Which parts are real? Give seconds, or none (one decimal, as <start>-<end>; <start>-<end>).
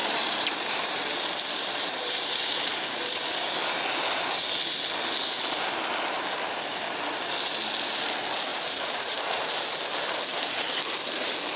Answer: 3.0-8.5; 9.8-11.6